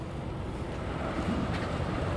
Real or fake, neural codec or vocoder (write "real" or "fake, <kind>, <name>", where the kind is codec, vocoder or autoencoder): real